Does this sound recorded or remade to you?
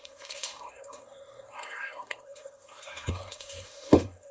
remade